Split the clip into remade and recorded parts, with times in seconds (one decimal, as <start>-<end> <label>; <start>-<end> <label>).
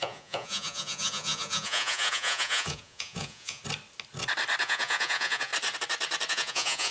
0.0-3.6 remade; 3.6-4.6 recorded; 4.6-5.5 remade; 5.5-6.3 recorded; 6.3-6.9 remade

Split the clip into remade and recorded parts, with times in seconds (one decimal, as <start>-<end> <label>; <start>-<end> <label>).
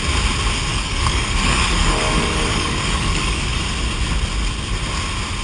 0.0-0.7 recorded; 0.7-3.6 remade; 3.6-5.4 recorded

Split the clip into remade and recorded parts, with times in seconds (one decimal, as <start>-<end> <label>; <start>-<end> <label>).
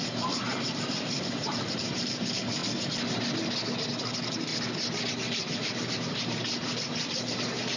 0.0-2.6 remade; 2.6-4.0 recorded; 4.0-4.5 remade; 4.5-5.1 recorded; 5.1-7.8 remade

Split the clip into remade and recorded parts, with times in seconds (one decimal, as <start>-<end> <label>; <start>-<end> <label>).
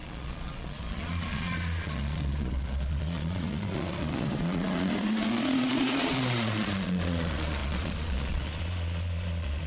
0.0-9.7 remade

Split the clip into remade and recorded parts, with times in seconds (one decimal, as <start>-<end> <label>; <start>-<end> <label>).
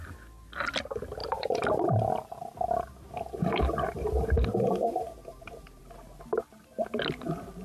0.0-1.2 recorded; 1.2-5.8 remade; 5.8-7.6 recorded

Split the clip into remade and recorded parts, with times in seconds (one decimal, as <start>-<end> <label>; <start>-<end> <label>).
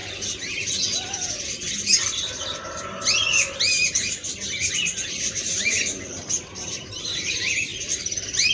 0.0-5.1 recorded; 5.1-8.5 remade